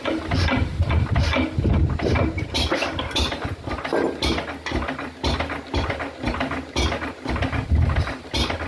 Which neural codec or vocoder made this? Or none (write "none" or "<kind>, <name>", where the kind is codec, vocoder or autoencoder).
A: none